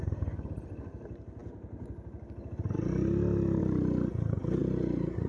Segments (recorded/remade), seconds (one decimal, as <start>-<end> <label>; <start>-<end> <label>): 0.0-5.3 recorded